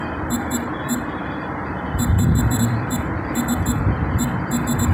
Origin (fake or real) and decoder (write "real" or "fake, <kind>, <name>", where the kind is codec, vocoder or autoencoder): fake, vocoder, BigVGAN v2